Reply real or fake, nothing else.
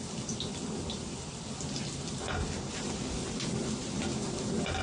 real